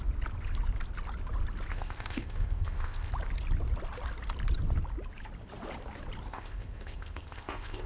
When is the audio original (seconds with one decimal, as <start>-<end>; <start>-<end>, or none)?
0.0-1.7; 3.1-6.3